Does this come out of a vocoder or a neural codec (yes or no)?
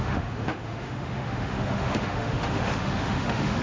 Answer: yes